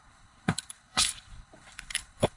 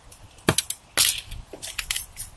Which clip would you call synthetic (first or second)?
first